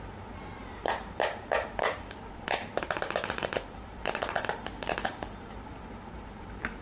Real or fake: fake